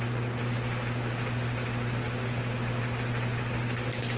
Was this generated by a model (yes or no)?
no